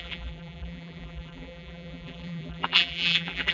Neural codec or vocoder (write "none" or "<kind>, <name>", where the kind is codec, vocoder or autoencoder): vocoder, BigVGAN v2